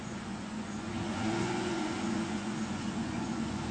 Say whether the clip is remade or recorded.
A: remade